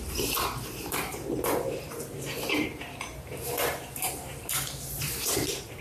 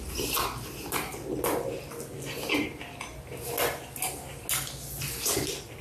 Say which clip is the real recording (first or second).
second